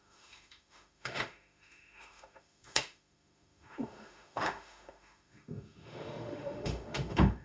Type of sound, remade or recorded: remade